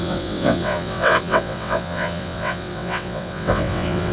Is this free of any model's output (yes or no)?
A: no